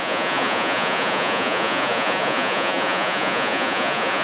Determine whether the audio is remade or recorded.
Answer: remade